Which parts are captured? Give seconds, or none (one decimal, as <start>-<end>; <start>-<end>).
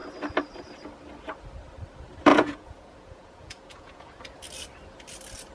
0.0-2.3; 4.2-5.5